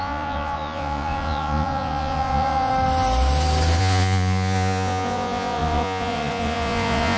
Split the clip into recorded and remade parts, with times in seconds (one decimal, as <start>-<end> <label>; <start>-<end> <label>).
0.0-2.7 remade; 2.7-3.8 recorded; 3.8-7.2 remade